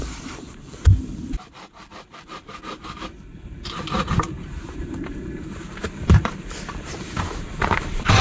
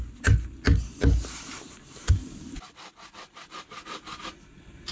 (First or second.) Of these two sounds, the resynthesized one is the first